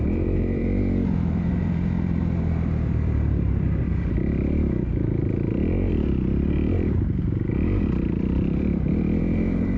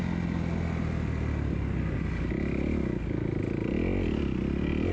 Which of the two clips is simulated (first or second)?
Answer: first